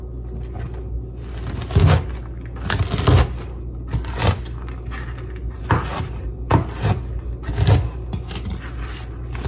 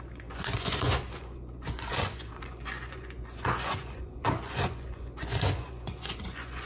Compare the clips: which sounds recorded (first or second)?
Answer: first